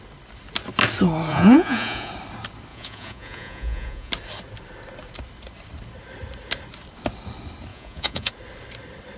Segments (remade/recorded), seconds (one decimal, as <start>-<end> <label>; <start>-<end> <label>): 0.0-1.3 recorded; 1.3-2.1 remade; 2.1-2.7 recorded; 2.7-4.1 remade; 4.1-7.7 recorded; 7.7-8.3 remade; 8.3-9.2 recorded